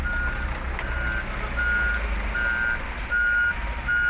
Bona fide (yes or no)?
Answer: yes